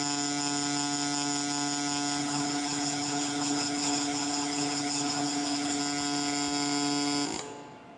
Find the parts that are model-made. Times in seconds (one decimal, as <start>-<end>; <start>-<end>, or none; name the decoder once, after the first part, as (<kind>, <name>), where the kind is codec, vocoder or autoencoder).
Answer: 2.2-5.8 (codec, HILCodec)